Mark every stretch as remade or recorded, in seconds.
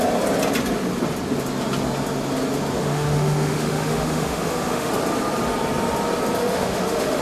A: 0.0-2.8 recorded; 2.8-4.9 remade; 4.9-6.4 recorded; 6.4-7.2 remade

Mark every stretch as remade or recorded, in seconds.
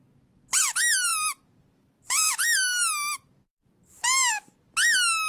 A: 0.0-5.3 recorded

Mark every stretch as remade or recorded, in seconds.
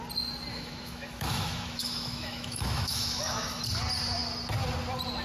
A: 0.0-0.5 recorded; 0.5-3.6 remade; 3.6-5.2 recorded